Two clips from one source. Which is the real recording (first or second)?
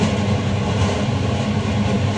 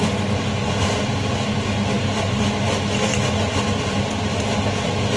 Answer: second